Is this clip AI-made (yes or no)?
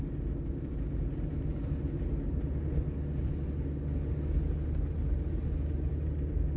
no